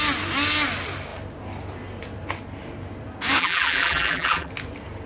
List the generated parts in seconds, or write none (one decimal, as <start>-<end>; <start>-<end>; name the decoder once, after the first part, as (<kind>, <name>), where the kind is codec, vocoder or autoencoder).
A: 3.4-4.5 (vocoder, BigVGAN v2)